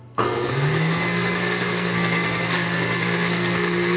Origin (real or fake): fake